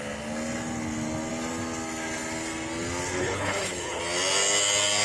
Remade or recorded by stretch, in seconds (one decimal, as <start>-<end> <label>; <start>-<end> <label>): 0.0-3.2 recorded; 3.2-4.0 remade; 4.0-5.0 recorded